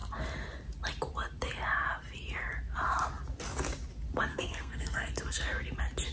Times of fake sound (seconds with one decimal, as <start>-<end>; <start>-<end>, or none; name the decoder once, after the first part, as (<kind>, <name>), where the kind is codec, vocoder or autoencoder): 4.3-5.1 (codec, SNAC)